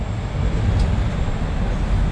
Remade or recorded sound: recorded